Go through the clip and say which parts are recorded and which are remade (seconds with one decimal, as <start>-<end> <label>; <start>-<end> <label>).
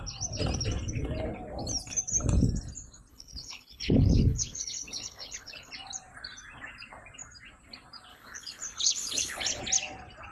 0.0-3.1 recorded; 3.1-5.7 remade; 5.7-8.1 recorded; 8.1-9.6 remade; 9.6-10.3 recorded